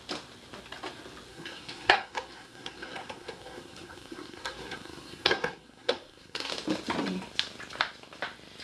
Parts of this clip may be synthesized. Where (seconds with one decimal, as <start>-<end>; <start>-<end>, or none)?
1.3-6.5